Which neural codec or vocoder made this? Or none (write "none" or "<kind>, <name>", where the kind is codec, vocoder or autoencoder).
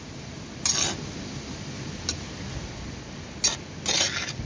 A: none